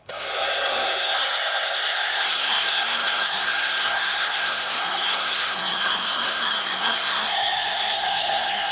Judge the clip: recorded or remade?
remade